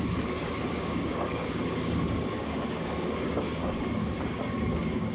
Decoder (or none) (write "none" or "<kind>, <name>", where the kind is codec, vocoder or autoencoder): codec, DAC